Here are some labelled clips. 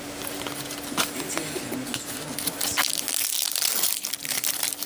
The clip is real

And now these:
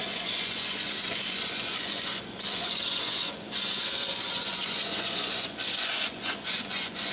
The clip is fake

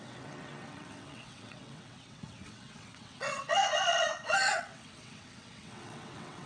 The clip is fake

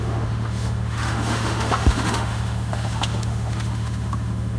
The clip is fake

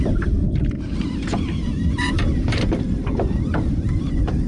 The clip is fake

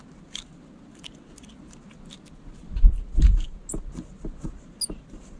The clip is real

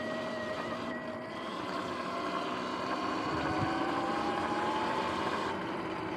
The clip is fake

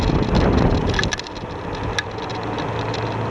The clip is real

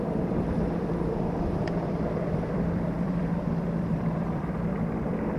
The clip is fake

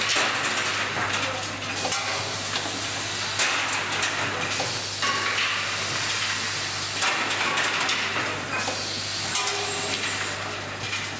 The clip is real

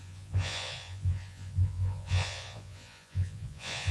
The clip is fake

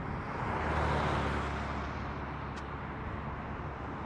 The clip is real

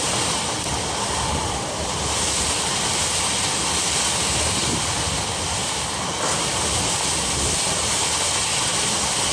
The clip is real